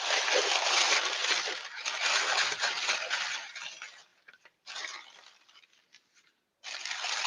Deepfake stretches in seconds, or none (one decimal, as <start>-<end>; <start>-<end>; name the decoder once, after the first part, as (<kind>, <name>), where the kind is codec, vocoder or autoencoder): 0.0-1.2 (vocoder, BigVGAN v2); 1.7-4.1; 4.8-7.3